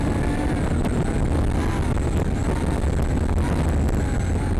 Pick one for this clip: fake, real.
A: real